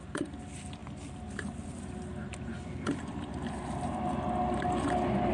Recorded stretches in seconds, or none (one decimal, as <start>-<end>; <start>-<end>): 0.8-1.5; 2.3-3.0